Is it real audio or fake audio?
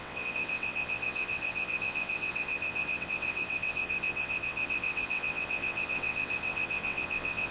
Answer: fake